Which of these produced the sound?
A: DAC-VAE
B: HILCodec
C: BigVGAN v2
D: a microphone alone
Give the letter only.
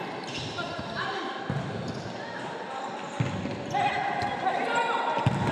D